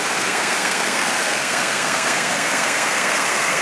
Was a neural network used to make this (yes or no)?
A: yes